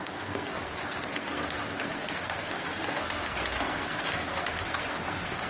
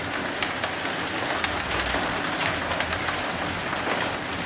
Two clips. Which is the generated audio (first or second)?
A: first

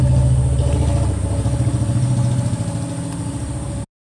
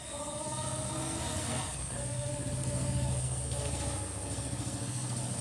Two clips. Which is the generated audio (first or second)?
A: second